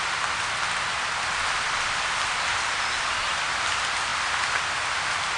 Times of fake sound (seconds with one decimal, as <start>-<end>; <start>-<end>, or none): none